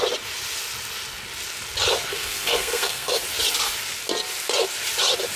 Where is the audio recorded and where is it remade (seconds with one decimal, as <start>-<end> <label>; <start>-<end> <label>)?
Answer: 0.0-2.1 recorded; 2.1-3.2 remade; 3.2-5.4 recorded